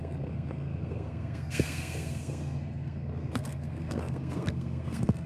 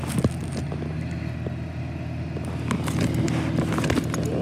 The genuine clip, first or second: second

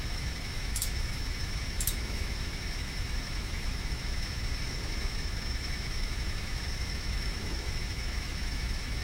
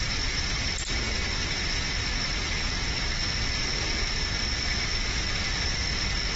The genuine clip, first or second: second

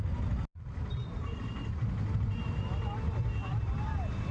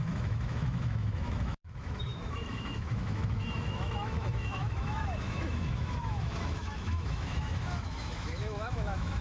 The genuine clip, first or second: first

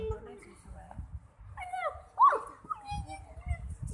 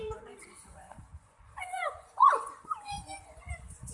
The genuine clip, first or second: first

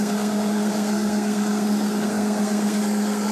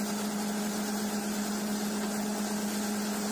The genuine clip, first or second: second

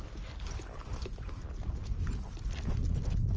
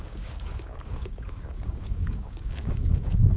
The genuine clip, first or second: first